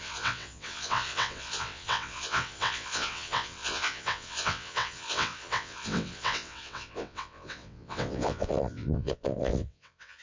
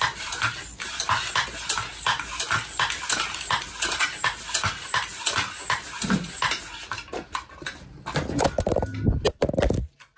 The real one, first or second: second